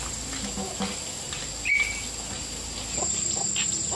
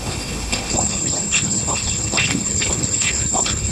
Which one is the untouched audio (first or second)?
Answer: first